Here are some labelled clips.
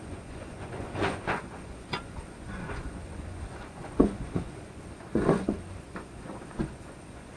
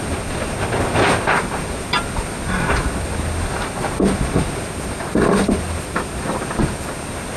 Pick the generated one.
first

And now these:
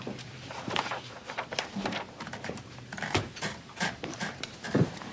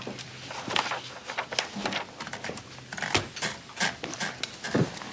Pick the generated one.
first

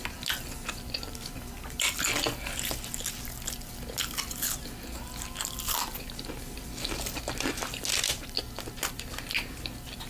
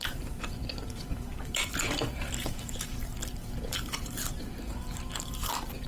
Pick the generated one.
second